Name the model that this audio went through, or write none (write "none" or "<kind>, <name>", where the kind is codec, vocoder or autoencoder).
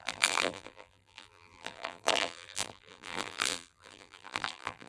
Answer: vocoder, BigVGAN v2